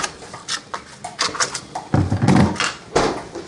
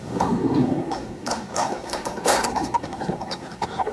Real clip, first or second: first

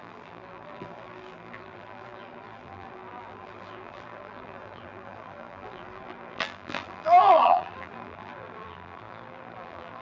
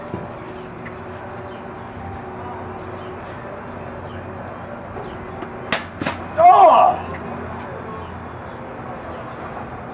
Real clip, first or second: second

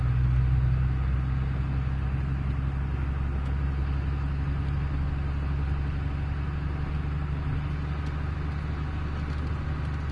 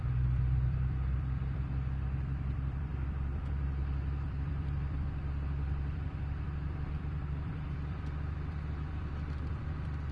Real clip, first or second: first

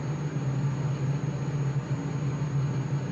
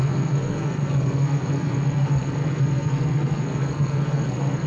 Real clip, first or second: first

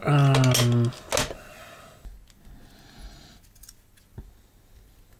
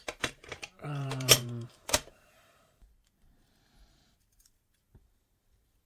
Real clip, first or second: first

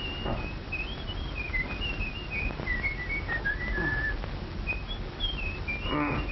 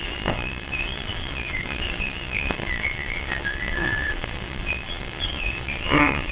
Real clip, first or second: first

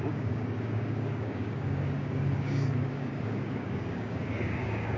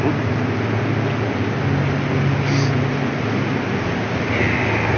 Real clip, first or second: second